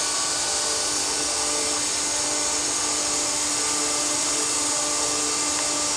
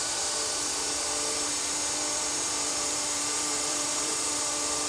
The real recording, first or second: first